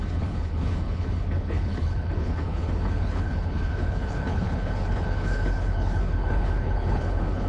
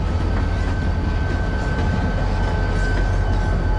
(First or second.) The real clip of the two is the second